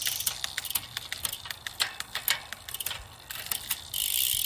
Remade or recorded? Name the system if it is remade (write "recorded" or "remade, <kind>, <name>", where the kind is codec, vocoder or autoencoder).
recorded